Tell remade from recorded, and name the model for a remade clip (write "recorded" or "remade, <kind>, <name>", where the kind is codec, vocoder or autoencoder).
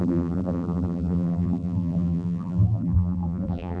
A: remade, vocoder, BigVGAN v2